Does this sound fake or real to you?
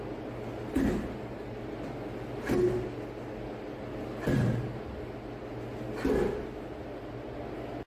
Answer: real